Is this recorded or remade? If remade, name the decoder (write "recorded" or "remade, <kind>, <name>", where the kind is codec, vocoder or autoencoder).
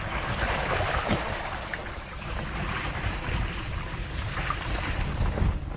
recorded